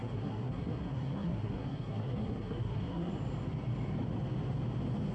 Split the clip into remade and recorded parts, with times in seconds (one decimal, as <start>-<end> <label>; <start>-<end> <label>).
0.0-3.1 remade; 3.1-5.1 recorded